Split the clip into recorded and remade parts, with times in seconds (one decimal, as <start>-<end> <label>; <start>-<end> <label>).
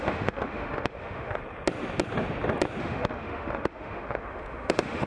0.0-1.4 remade; 1.4-2.8 recorded; 2.8-5.1 remade